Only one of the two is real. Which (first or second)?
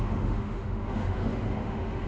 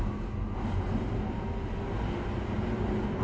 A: second